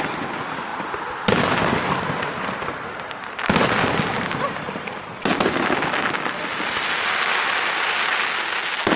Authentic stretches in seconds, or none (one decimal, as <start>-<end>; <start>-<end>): 0.0-9.0